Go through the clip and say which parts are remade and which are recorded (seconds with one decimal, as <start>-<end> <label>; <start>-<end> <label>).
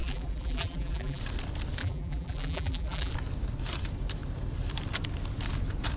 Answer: 0.0-1.2 remade; 1.2-1.8 recorded; 1.8-3.1 remade; 3.1-6.0 recorded